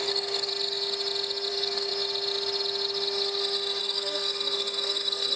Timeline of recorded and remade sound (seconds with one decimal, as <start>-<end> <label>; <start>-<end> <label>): 0.0-0.5 remade; 0.5-1.5 recorded; 1.5-1.9 remade; 1.9-3.8 recorded; 3.8-5.4 remade